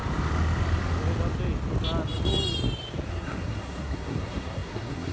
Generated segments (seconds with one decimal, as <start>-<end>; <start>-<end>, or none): 3.1-5.1

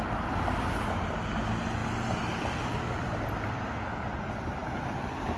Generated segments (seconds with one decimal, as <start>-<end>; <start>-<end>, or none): none